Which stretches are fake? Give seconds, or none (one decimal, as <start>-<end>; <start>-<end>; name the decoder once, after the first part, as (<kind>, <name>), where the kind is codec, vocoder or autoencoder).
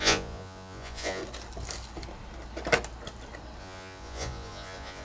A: 0.0-1.2 (vocoder, Vocos); 3.6-5.0